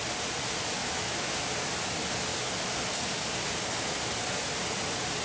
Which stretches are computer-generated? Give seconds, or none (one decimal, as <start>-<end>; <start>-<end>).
0.8-1.4